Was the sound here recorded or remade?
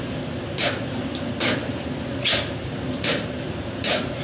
remade